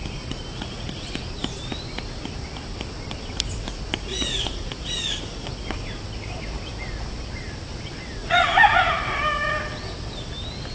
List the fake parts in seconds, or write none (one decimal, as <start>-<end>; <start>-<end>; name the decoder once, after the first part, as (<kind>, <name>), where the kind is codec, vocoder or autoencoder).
0.5-1.1 (vocoder, Vocos); 4.1-5.5; 8.2-8.9